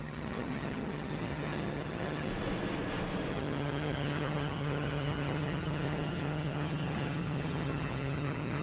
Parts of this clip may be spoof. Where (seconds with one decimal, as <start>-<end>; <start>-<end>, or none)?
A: 0.0-2.3; 3.3-8.6